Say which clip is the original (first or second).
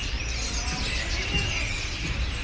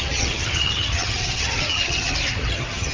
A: first